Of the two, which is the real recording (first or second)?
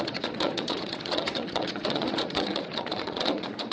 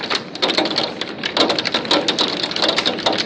second